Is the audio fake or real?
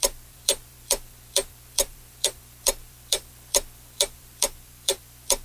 fake